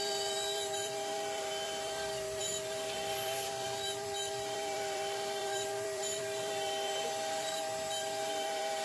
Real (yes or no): no